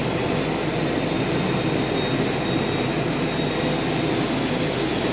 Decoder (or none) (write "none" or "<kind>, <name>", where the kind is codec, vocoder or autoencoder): none